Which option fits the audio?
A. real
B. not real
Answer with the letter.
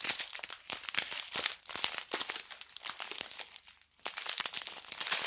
A